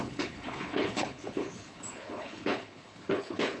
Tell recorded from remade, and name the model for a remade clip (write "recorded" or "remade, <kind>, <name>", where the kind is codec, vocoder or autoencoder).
remade, codec, HILCodec